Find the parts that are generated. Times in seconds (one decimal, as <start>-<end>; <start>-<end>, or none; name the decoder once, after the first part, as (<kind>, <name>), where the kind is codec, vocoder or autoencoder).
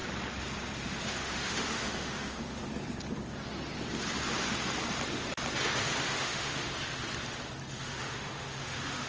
1.0-2.6 (autoencoder, DAC-VAE); 6.0-6.7; 7.8-9.1